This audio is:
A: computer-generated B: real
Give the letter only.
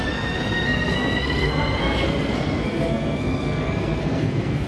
A